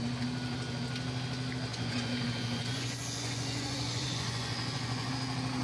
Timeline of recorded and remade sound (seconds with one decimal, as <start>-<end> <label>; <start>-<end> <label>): 0.0-1.7 recorded; 1.7-5.1 remade; 5.1-5.6 recorded